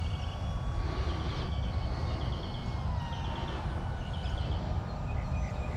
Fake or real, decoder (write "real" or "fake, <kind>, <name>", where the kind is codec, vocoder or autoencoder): real